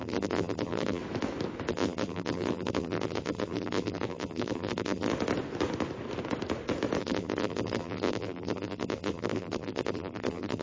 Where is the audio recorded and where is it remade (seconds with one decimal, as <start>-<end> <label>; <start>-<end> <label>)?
0.0-1.0 remade; 1.0-1.7 recorded; 1.7-5.1 remade; 5.1-7.0 recorded; 7.0-10.6 remade